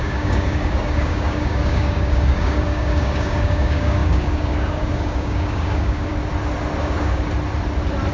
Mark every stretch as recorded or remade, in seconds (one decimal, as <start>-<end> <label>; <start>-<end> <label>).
0.0-6.1 remade; 6.1-6.8 recorded; 6.8-7.3 remade; 7.3-8.1 recorded